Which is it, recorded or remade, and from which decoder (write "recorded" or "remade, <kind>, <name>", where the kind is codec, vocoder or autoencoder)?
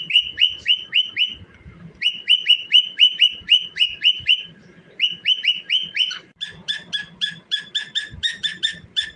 remade, vocoder, BigVGAN v2